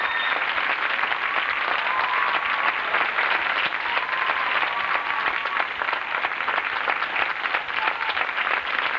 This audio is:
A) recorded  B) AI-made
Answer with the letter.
A